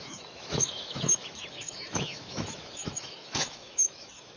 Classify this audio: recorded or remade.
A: remade